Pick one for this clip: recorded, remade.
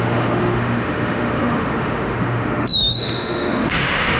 remade